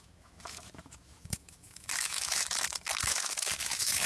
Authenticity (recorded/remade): remade